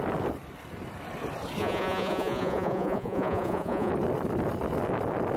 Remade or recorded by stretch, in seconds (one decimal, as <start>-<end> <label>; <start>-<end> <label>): 0.0-1.6 recorded; 1.6-3.9 remade; 3.9-5.4 recorded